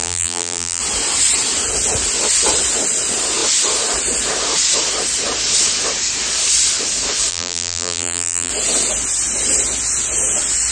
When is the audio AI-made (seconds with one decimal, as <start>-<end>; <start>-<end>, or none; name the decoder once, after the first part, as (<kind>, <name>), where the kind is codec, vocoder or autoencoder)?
0.0-0.8 (vocoder, BigVGAN v2); 7.3-8.5